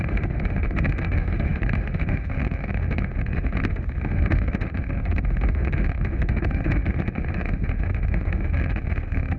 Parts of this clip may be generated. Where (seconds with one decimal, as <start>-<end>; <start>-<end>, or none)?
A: 0.0-9.4